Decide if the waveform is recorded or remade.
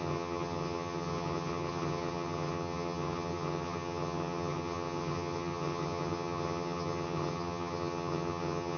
remade